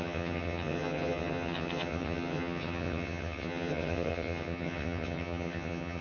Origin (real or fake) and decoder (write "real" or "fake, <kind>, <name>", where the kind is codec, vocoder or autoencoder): fake, vocoder, HiFi-GAN